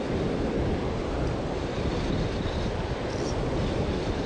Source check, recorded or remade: recorded